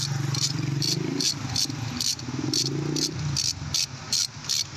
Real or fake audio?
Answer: real